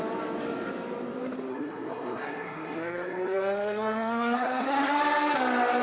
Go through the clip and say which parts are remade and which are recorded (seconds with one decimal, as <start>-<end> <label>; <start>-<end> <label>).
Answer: 0.0-1.5 recorded; 1.5-5.0 remade; 5.0-5.8 recorded